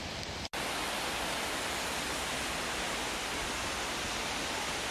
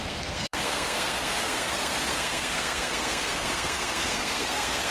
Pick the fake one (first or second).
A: second